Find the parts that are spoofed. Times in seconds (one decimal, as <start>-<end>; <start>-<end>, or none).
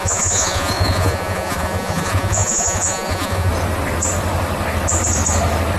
0.0-3.5